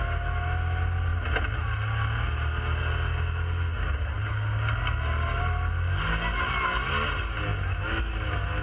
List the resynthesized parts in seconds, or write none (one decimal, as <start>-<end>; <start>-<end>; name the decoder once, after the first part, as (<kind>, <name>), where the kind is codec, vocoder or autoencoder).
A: none